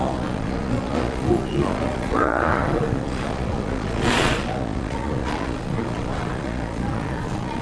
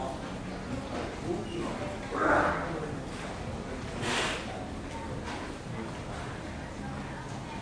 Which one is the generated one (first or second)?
first